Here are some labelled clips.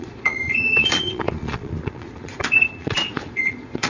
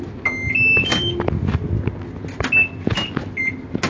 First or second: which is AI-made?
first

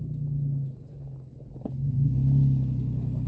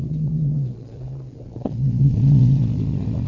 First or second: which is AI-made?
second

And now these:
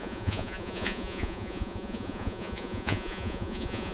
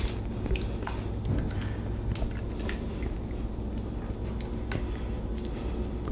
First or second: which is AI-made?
first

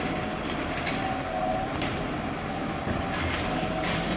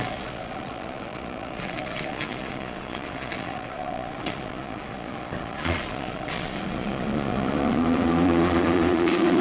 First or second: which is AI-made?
second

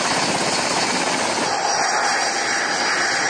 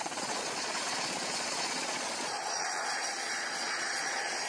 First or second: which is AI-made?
second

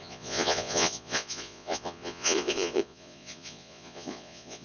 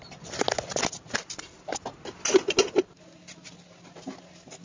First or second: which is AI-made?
first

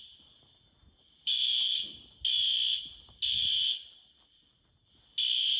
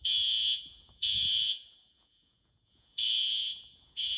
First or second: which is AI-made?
second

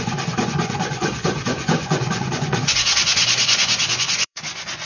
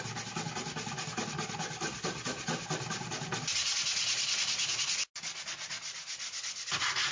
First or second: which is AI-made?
first